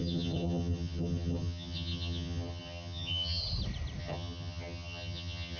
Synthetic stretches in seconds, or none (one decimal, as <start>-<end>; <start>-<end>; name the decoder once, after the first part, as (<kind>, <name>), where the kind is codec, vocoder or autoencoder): 0.0-3.4 (vocoder, HiFi-GAN); 4.0-5.6